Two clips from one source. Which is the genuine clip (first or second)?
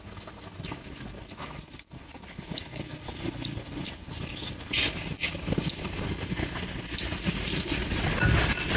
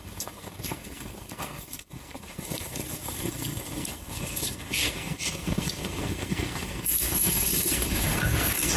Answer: first